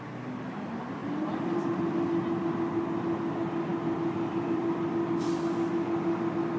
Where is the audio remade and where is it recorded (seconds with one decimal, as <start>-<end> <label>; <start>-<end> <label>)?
0.0-1.0 recorded; 1.0-1.8 remade; 1.8-3.7 recorded; 3.7-4.6 remade; 4.6-6.6 recorded